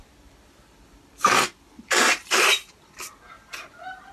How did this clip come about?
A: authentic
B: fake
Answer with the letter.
B